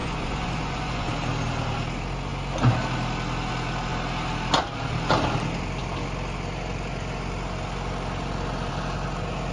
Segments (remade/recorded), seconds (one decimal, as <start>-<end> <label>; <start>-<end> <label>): 0.0-1.1 remade; 1.1-9.5 recorded